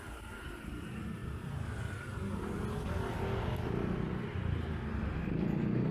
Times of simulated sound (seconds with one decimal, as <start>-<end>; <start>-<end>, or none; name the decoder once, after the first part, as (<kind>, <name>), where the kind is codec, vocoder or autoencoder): none